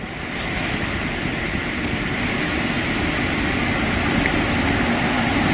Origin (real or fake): real